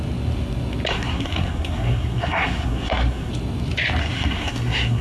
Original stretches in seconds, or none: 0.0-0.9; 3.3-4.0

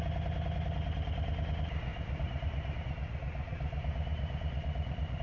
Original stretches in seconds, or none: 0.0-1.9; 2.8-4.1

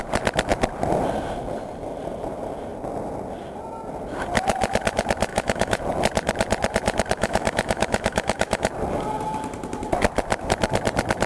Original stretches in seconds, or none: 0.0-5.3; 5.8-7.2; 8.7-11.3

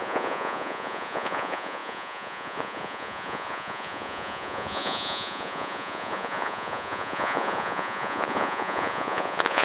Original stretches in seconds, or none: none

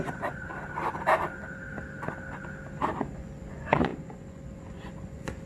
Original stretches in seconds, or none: 0.5-3.0

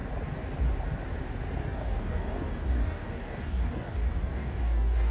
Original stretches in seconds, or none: 0.0-1.6

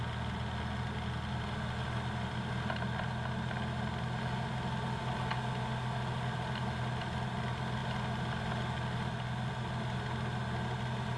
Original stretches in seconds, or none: 0.0-11.2